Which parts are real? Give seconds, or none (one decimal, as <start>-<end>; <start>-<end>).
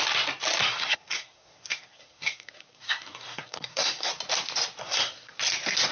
0.0-0.6; 4.1-4.8; 5.4-5.9